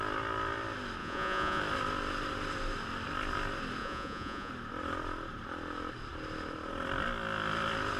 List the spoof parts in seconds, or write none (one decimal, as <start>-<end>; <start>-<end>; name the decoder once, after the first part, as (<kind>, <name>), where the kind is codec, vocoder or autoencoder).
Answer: 1.0-1.6 (vocoder, Vocos); 3.8-4.5